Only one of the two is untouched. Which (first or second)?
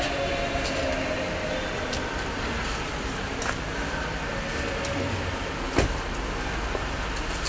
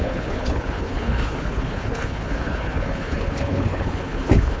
first